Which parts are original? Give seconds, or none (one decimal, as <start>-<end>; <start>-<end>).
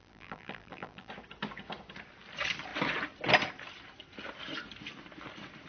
1.1-5.7